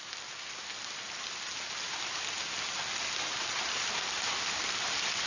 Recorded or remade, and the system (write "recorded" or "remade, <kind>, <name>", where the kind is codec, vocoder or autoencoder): recorded